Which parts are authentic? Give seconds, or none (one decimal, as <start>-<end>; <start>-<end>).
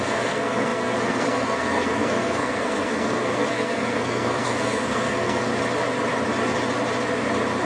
5.5-7.6